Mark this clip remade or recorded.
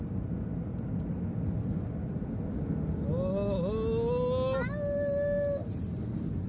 recorded